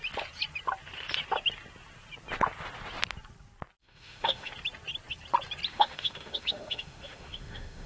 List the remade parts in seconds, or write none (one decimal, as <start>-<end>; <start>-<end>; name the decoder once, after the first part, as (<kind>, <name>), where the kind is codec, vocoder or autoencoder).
3.8-4.5 (autoencoder, DAC-VAE); 5.7-7.9